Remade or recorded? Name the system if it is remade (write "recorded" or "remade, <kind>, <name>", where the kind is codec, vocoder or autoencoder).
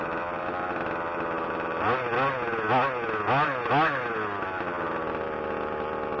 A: recorded